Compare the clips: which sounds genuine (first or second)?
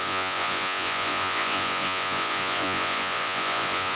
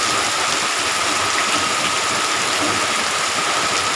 second